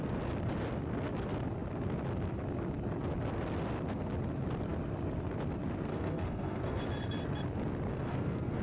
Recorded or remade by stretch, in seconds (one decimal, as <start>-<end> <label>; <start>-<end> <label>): 0.0-5.9 recorded; 5.9-6.8 remade; 6.8-7.9 recorded; 7.9-8.6 remade